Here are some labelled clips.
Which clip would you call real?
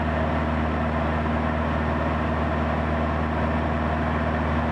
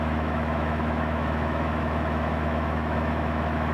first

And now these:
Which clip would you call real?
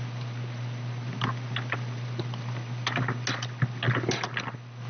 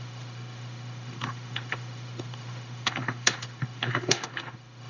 first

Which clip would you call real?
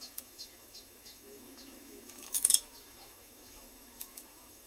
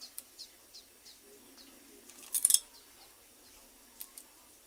second